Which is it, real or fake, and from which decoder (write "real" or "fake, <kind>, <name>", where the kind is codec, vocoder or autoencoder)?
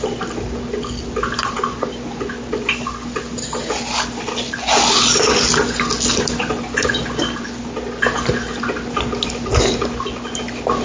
real